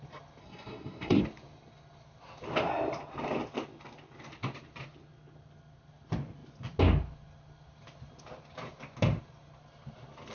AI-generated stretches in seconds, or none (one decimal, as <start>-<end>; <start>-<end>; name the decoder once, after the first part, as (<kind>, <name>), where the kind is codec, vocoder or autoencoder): 0.4-1.2 (codec, SNAC)

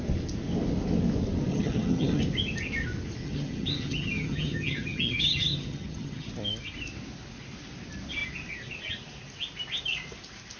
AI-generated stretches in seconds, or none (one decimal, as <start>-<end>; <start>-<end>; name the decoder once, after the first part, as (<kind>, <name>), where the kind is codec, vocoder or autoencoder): 1.5-2.2 (vocoder, HiFi-GAN); 3.2-6.3

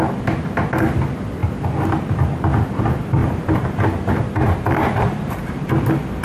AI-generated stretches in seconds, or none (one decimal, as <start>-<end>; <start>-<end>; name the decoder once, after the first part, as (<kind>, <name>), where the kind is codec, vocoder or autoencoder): 3.2-5.7 (vocoder, BigVGAN v2)